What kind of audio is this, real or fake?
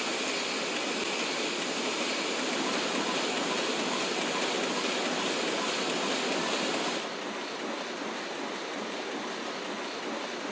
real